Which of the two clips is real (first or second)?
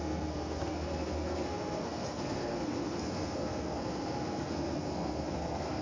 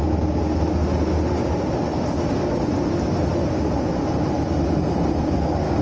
second